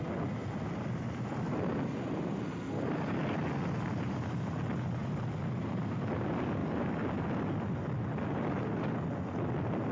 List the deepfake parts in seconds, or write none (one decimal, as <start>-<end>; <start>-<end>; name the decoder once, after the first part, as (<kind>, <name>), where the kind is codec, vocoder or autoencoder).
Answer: 0.4-4.3 (vocoder, BigVGAN v2)